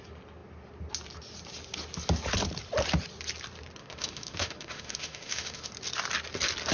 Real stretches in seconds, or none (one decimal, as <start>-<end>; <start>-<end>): 0.0-3.8; 5.7-6.7